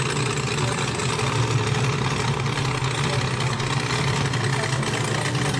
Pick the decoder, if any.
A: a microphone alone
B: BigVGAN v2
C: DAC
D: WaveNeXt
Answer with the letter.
A